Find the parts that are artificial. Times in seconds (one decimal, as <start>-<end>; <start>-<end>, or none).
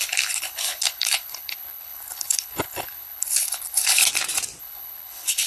0.0-4.0; 4.6-5.5